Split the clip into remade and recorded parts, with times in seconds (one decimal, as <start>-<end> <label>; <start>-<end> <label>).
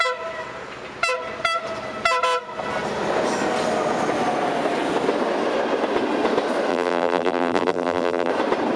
0.0-6.7 recorded; 6.7-8.3 remade; 8.3-8.8 recorded